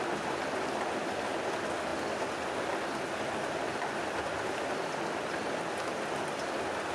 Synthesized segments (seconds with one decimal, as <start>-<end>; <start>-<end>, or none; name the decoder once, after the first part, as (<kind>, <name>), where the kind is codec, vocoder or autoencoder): none